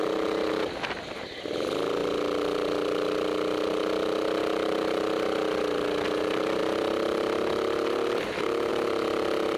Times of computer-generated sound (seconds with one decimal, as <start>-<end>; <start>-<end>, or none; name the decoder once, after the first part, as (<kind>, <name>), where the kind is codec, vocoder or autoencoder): none